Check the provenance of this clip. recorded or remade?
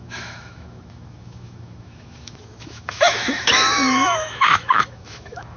remade